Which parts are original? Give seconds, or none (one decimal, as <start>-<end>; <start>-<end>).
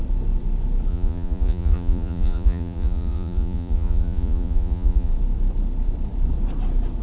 0.0-0.9; 5.1-7.0